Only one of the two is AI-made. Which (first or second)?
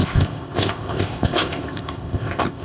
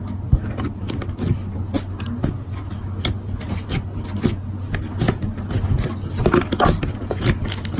first